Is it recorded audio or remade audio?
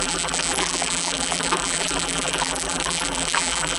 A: remade